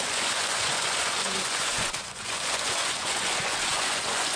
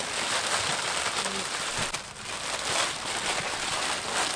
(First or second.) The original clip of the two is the second